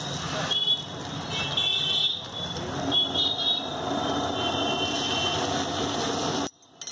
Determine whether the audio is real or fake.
real